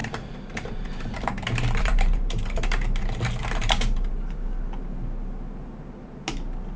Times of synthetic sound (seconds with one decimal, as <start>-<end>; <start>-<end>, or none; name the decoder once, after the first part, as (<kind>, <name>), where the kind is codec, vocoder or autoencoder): 0.0-4.1 (vocoder, BigVGAN v2)